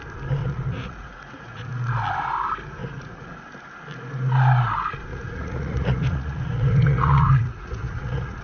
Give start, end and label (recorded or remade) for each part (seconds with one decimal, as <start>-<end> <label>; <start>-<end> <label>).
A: 0.0-0.4 recorded; 0.4-1.7 remade; 1.7-2.8 recorded; 2.8-3.4 remade; 3.4-5.1 recorded; 5.1-8.4 remade